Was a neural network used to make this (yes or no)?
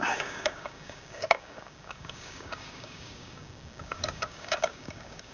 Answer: yes